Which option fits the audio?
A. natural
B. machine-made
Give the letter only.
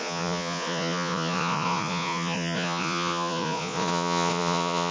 B